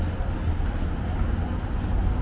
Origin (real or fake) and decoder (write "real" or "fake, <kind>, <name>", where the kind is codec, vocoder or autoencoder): real